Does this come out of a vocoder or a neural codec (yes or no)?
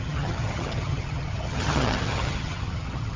yes